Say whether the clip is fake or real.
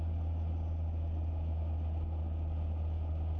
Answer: real